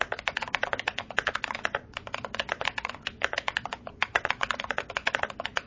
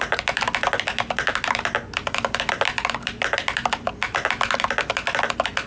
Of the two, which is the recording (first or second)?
second